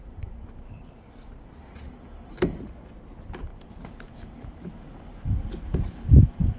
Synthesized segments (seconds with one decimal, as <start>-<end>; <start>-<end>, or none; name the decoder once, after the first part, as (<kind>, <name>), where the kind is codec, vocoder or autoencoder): 0.0-2.8 (vocoder, BigVGAN v2); 3.5-5.4